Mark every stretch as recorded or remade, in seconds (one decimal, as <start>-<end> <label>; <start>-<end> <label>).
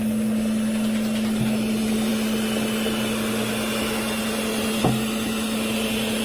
0.0-6.2 recorded